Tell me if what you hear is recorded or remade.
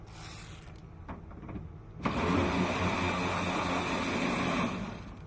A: recorded